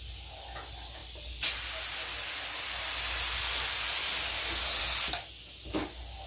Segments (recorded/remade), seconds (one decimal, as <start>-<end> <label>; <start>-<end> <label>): 0.0-6.3 recorded